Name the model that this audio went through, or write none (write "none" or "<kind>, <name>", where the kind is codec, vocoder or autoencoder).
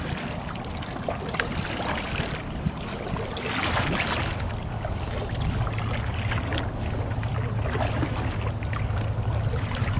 none